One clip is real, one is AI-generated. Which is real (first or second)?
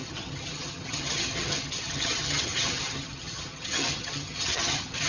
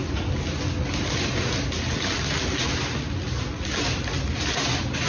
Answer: second